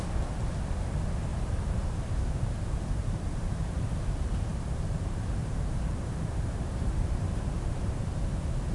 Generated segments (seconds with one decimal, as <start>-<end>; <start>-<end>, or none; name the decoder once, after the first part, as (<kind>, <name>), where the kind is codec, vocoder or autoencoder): 1.3-4.0 (vocoder, BigVGAN v2); 4.5-7.5